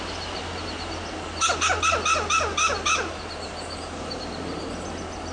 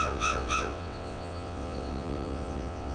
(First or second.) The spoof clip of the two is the second